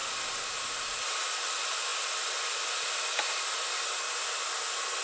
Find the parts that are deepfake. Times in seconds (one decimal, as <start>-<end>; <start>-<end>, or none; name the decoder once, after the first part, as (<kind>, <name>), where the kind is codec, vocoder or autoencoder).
none